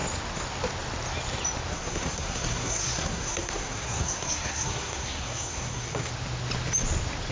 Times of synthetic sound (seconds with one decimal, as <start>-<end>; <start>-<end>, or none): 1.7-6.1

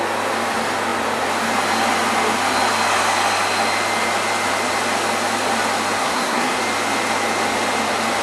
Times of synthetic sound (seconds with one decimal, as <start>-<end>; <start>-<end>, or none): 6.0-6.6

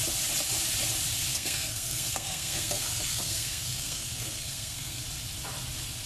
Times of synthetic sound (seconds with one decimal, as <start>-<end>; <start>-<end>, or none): 1.3-5.0

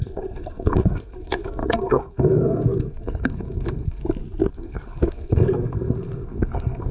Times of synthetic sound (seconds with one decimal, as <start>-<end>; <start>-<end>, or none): 0.0-4.0; 4.5-6.9